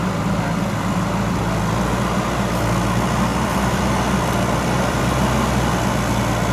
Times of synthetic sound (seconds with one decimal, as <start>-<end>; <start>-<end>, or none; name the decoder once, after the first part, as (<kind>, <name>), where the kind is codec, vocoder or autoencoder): 0.0-1.4 (vocoder, BigVGAN v2); 3.3-5.0